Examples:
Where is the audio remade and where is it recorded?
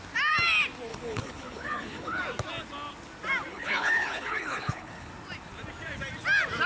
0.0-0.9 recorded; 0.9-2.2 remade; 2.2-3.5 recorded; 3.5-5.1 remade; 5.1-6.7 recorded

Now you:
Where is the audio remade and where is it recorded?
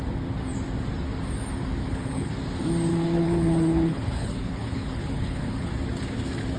0.0-1.8 recorded; 1.8-2.3 remade; 2.3-2.9 recorded; 2.9-5.7 remade; 5.7-6.6 recorded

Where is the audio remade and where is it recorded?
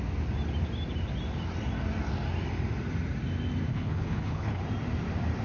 0.0-3.7 recorded; 3.7-4.6 remade; 4.6-5.4 recorded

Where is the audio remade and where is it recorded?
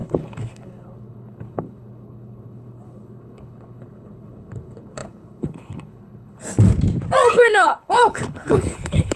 0.0-6.4 remade; 6.4-7.3 recorded; 7.3-9.2 remade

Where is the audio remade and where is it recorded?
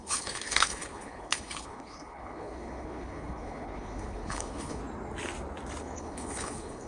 0.0-4.8 remade; 4.8-5.8 recorded; 5.8-6.9 remade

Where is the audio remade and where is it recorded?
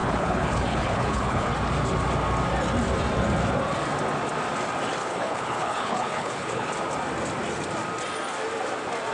0.0-1.5 remade; 1.5-5.0 recorded; 5.0-6.7 remade; 6.7-9.1 recorded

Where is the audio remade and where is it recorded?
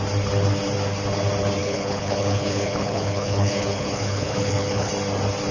0.0-1.6 recorded; 1.6-4.9 remade; 4.9-5.5 recorded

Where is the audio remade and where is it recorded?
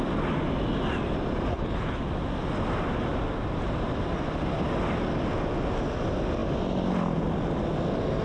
0.0-1.5 recorded; 1.5-2.0 remade; 2.0-8.2 recorded